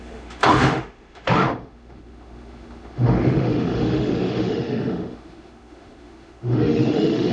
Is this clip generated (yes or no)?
yes